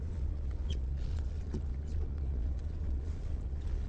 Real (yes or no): no